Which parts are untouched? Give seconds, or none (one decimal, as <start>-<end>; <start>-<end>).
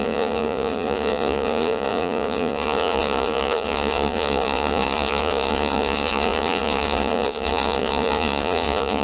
none